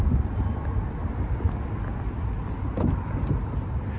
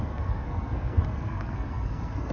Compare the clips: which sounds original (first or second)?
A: first